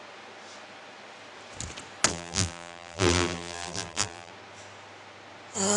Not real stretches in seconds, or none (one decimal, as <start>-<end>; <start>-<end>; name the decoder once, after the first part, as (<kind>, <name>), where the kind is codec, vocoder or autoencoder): 2.1-4.3 (vocoder, BigVGAN v2)